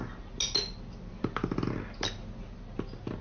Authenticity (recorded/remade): recorded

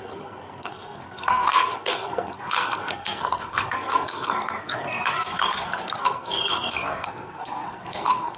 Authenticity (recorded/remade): remade